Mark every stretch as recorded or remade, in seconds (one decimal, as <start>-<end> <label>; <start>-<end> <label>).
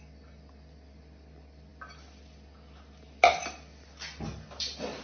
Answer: 0.0-5.0 recorded